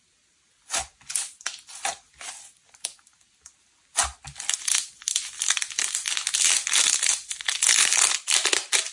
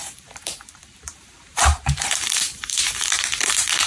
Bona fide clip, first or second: first